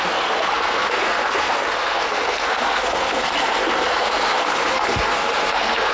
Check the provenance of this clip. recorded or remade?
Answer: remade